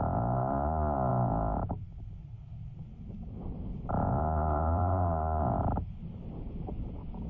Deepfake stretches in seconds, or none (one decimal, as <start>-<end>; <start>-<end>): none